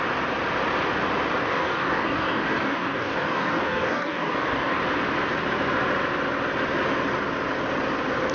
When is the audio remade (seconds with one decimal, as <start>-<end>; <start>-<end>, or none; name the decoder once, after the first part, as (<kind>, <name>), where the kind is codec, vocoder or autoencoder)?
1.5-4.8 (codec, DAC)